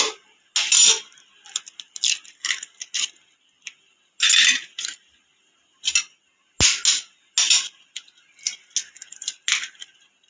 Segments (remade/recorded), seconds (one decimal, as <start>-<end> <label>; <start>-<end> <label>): 0.0-10.3 recorded